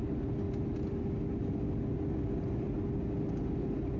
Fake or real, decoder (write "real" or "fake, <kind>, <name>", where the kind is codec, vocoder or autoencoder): real